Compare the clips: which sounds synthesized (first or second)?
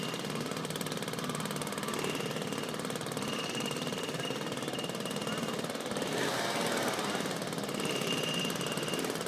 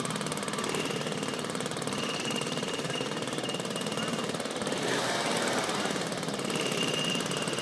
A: second